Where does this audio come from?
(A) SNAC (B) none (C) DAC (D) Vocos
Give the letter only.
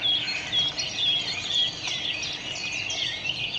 B